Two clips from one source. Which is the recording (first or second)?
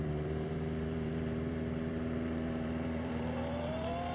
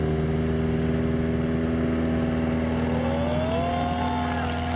second